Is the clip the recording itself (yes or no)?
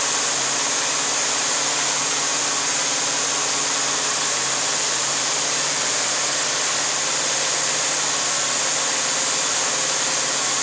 yes